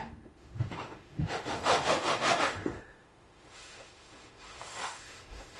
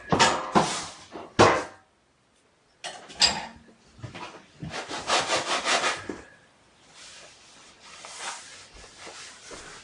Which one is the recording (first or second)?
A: second